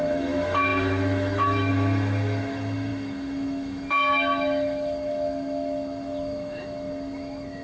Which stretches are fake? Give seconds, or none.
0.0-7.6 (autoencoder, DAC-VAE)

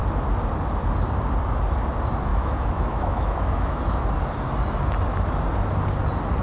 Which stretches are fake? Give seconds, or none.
2.3-4.0 (autoencoder, DAC-VAE)

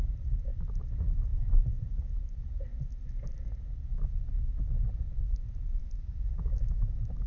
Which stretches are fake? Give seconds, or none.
5.8-7.3 (autoencoder, DAC-VAE)